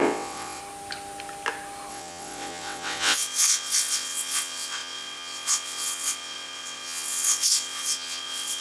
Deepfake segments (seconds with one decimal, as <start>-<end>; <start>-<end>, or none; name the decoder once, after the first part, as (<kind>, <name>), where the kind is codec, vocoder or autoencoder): 0.0-0.6 (vocoder, WaveNeXt); 1.9-8.6